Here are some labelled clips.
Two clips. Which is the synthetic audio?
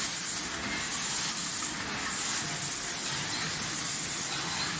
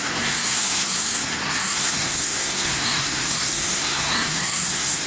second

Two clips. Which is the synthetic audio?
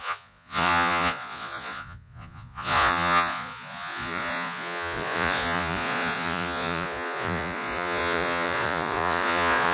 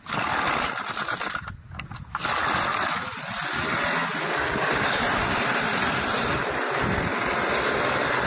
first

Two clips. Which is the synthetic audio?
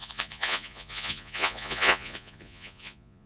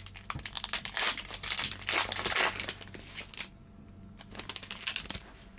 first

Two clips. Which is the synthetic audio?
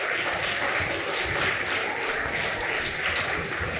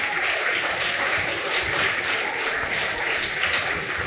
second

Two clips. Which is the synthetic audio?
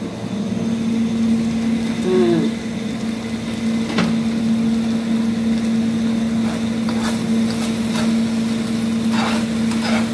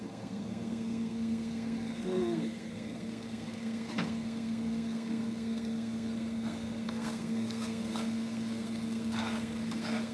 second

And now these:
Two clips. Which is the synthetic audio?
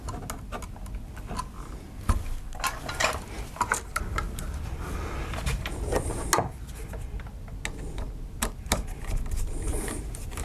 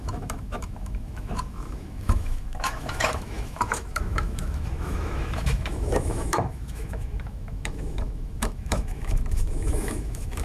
second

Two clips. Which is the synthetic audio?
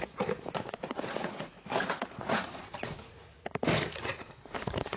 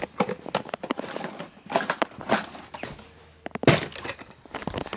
first